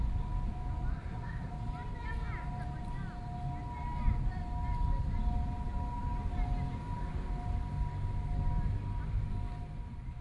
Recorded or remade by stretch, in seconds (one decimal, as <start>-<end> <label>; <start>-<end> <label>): 0.0-0.9 recorded; 0.9-1.5 remade; 1.5-10.2 recorded